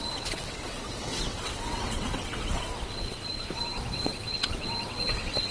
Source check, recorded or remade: remade